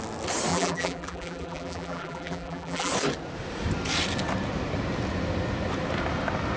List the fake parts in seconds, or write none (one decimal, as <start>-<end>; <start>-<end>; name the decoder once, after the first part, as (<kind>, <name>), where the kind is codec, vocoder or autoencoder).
0.5-2.9 (vocoder, BigVGAN v2)